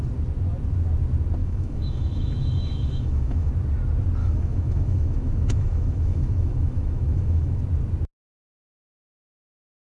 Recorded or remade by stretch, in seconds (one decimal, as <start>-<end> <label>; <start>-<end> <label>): 0.0-1.4 recorded; 1.4-3.5 remade; 3.5-4.2 recorded; 4.2-7.6 remade; 7.6-9.8 recorded